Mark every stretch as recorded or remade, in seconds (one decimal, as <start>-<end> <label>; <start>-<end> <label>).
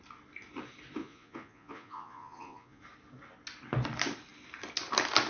0.0-1.0 recorded; 1.0-2.8 remade; 2.8-5.3 recorded